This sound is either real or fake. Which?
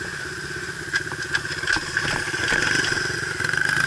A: real